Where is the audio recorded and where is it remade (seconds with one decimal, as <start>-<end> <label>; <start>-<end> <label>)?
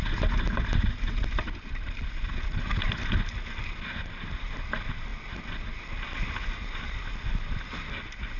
0.0-8.4 recorded